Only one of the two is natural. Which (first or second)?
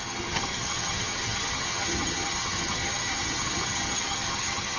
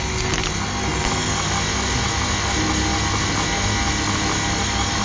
second